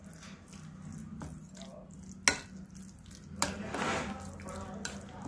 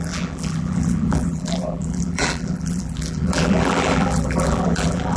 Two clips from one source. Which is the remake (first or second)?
second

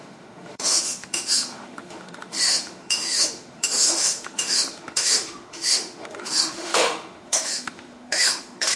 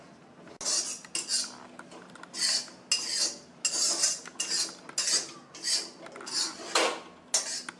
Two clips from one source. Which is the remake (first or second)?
first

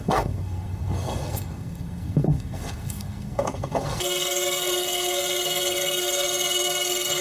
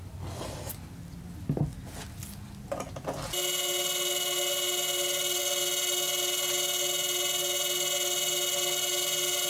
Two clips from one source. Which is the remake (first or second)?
first